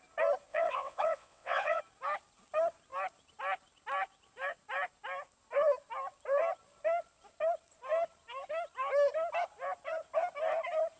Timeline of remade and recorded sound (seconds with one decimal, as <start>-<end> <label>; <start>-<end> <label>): 0.0-0.5 recorded; 0.5-1.8 remade; 1.8-11.0 recorded

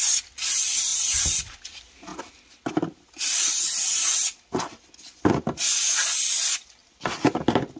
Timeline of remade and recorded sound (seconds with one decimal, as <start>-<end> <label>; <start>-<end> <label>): 0.0-7.8 recorded

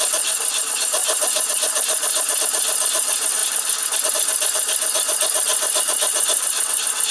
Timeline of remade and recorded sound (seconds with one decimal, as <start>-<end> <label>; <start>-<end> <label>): 0.0-7.1 recorded

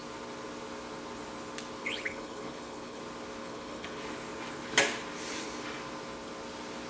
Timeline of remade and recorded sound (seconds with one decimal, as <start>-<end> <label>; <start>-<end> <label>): 0.0-1.8 recorded; 1.8-3.0 remade; 3.0-3.4 recorded; 3.4-4.0 remade; 4.0-6.9 recorded

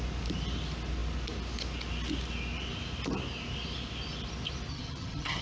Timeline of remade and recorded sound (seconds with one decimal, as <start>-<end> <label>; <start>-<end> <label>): 0.0-4.7 recorded; 4.7-5.4 remade

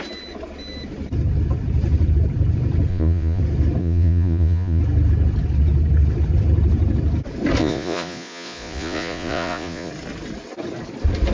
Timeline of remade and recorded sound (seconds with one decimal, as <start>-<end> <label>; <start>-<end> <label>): 0.0-2.9 recorded; 2.9-3.4 remade; 3.4-3.8 recorded; 3.8-4.8 remade; 4.8-7.6 recorded; 7.6-9.9 remade; 9.9-11.3 recorded

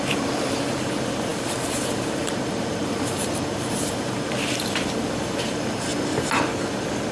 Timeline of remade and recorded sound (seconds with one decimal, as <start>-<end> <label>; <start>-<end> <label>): 0.0-5.9 remade; 5.9-7.1 recorded